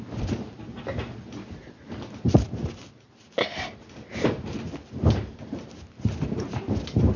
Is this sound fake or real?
real